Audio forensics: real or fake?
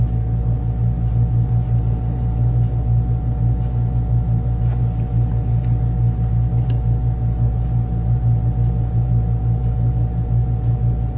real